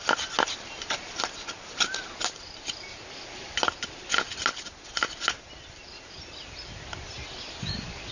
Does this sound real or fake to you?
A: real